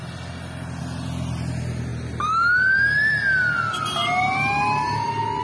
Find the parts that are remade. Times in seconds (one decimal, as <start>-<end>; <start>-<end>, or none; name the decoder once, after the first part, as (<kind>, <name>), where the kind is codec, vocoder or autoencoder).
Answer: none